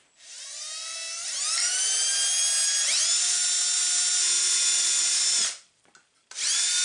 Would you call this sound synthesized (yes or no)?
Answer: no